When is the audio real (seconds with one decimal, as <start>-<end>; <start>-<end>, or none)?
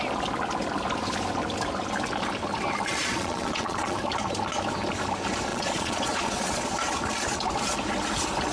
0.0-3.0; 4.0-5.5; 6.6-8.5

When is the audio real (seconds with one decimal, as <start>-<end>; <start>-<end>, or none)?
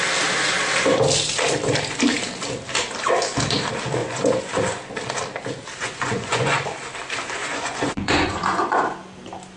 0.0-4.0; 4.5-5.8; 6.7-7.4; 8.8-9.6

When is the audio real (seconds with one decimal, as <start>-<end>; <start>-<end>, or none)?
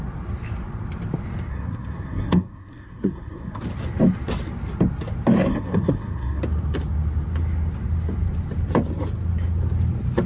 0.0-1.5; 3.6-5.5; 6.4-10.3